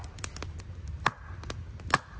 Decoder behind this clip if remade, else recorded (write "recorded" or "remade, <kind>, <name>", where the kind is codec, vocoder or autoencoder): recorded